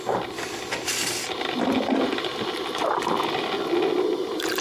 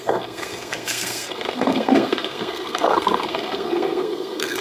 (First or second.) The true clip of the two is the first